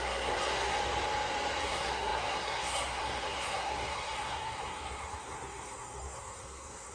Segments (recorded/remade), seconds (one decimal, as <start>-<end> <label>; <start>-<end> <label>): 0.0-0.8 remade; 0.8-1.6 recorded; 1.6-6.9 remade